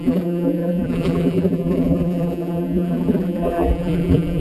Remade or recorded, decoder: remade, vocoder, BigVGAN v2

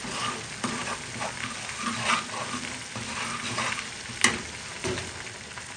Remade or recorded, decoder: recorded